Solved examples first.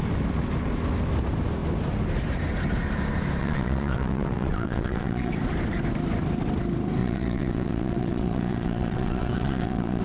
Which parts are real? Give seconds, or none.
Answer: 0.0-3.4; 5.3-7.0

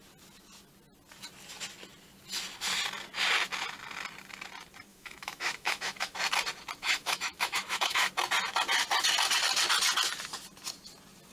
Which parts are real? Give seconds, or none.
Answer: 0.0-4.9; 6.2-6.8; 8.1-11.3